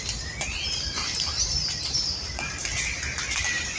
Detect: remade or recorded recorded